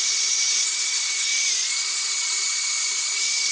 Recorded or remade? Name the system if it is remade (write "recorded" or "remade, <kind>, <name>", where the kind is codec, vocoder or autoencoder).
remade, vocoder, Vocos